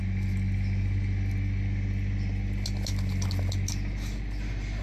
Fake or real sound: real